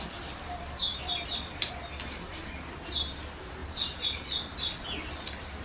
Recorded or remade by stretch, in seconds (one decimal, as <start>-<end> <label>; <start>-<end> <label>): 0.0-5.6 recorded

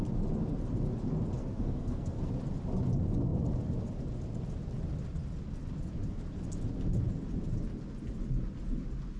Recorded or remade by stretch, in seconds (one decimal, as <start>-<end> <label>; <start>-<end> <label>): 0.0-1.4 recorded; 1.4-2.3 remade; 2.3-9.2 recorded